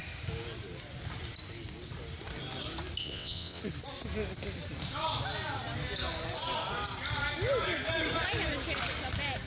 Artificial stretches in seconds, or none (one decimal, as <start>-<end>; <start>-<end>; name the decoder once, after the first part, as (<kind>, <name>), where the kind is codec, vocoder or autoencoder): 3.0-3.6 (vocoder, WaveNeXt)